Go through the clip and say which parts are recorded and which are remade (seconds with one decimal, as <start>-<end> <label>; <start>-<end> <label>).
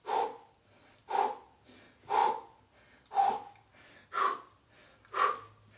0.0-5.8 recorded